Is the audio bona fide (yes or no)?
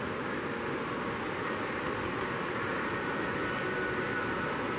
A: yes